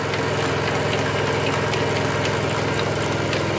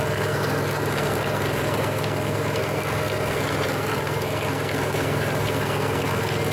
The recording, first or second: first